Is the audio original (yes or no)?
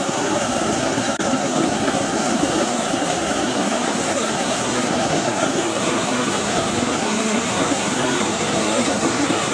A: no